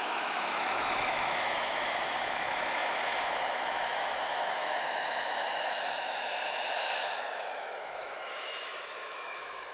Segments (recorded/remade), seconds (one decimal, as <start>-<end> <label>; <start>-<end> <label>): 0.0-9.7 remade